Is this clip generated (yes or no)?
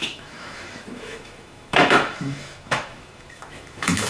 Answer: yes